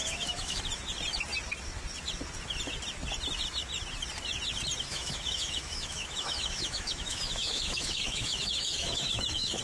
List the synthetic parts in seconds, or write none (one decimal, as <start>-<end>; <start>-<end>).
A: 0.0-0.6; 4.9-9.6